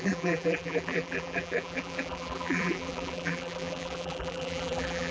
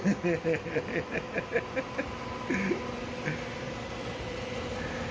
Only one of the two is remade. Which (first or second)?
first